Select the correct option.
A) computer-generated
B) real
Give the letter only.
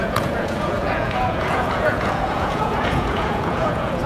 A